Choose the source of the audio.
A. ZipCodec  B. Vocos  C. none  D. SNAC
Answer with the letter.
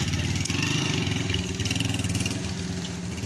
C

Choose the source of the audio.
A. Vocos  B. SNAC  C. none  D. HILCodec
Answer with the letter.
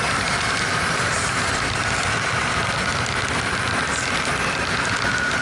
C